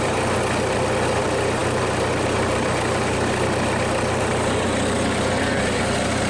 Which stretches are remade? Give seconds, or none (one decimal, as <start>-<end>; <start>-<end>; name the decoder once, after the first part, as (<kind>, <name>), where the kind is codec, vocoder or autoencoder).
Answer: none